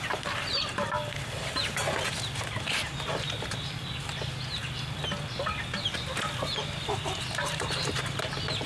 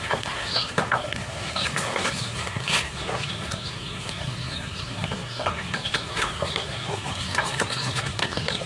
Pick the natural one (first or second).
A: first